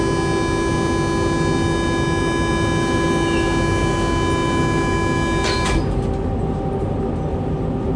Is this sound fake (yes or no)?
no